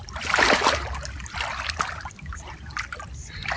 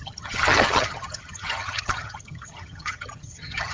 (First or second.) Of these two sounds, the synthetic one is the second